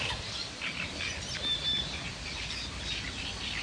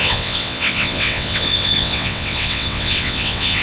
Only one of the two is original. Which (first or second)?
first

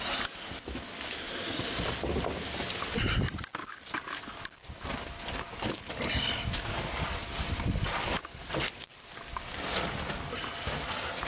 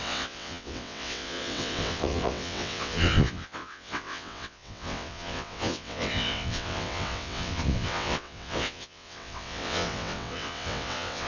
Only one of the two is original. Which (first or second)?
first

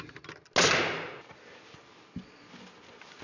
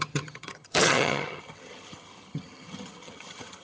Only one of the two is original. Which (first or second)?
first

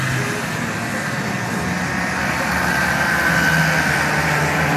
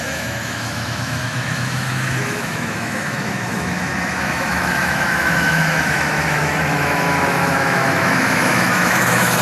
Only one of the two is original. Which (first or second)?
first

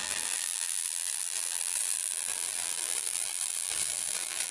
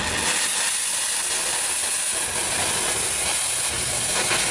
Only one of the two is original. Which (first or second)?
second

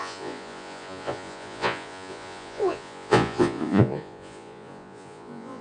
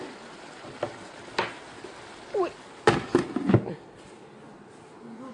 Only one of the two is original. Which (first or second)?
second